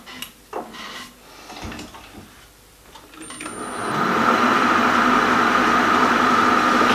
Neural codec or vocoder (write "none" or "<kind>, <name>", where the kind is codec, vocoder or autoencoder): none